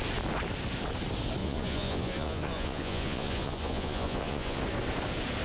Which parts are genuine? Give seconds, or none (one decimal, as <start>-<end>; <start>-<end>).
0.0-1.4; 4.6-5.4